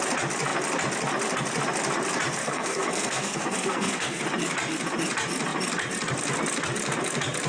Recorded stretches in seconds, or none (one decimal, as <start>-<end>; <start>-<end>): 0.0-2.4; 4.2-7.5